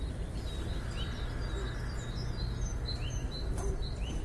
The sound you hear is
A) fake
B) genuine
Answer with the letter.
B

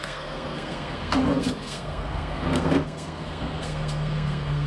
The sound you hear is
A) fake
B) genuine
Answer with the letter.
A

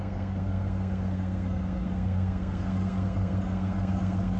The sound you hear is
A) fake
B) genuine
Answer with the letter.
A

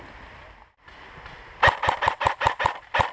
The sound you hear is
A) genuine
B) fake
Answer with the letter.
A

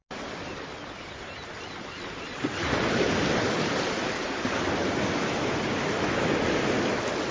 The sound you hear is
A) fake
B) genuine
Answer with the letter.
B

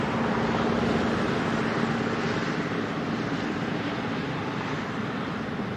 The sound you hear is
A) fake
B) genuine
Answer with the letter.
B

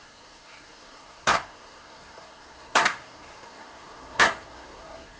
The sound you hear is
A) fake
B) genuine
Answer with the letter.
A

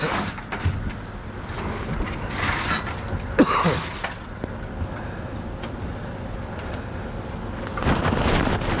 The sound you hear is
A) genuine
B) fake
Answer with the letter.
A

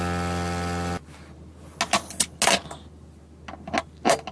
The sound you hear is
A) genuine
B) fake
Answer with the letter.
A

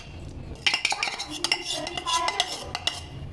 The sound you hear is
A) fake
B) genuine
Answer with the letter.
B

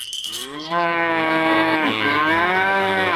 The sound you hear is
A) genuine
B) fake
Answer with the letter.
B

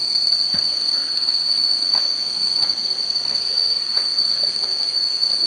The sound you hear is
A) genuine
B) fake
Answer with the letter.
B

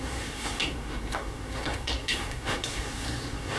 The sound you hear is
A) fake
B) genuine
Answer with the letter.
A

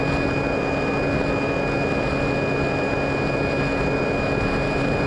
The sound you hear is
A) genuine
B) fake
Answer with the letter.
A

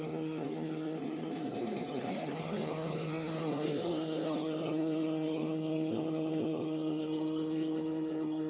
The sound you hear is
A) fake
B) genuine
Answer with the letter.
A